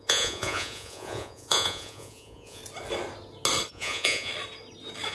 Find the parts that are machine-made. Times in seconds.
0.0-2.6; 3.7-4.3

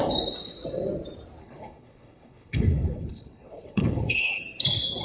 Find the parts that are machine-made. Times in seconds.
1.4-4.4